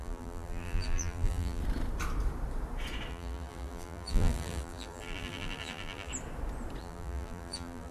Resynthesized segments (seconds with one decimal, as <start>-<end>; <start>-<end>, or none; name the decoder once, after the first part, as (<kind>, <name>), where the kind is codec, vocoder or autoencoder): 0.0-1.6 (vocoder, BigVGAN v2); 3.1-6.1; 6.8-7.9